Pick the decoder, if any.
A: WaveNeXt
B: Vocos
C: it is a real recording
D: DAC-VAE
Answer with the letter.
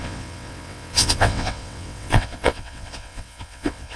A